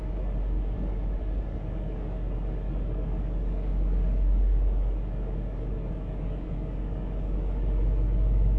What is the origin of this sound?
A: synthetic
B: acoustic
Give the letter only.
A